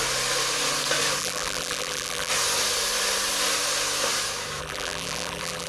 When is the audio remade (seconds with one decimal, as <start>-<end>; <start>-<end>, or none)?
1.2-2.3; 4.6-5.7